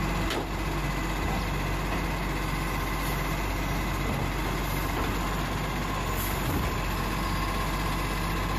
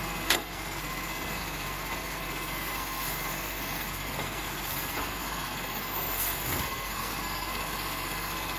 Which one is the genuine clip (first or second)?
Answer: first